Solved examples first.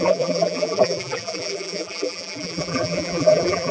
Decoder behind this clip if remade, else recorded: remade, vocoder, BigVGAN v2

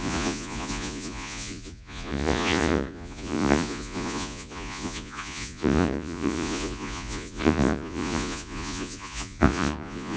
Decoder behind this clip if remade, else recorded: remade, vocoder, Vocos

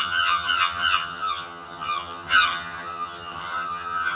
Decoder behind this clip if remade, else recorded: remade, vocoder, HiFi-GAN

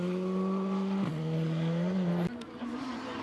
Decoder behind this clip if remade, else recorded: recorded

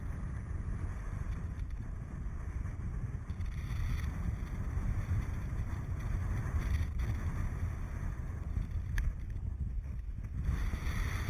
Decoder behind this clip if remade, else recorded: remade, vocoder, BigVGAN v2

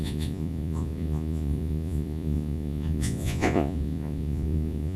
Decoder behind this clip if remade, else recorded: remade, vocoder, Vocos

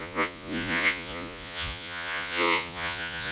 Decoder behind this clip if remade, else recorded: remade, vocoder, Vocos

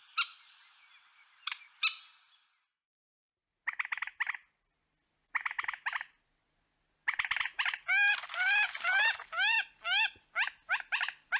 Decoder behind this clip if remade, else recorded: recorded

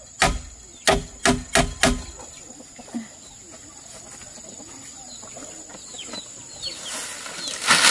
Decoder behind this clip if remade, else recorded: recorded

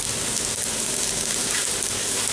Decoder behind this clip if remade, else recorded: remade, codec, DAC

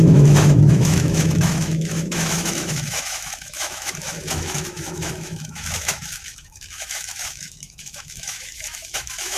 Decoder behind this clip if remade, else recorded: remade, autoencoder, DAC-VAE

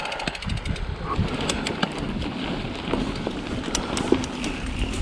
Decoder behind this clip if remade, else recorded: recorded